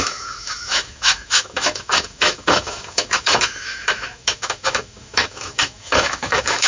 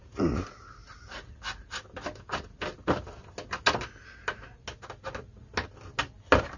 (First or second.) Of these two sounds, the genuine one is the second